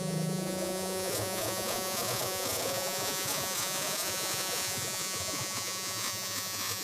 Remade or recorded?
remade